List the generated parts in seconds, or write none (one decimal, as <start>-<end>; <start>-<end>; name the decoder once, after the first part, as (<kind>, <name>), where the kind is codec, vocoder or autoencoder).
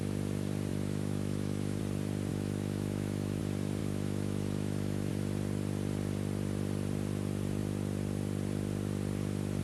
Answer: 0.7-1.8 (autoencoder, DAC-VAE); 2.3-3.4; 3.8-5.1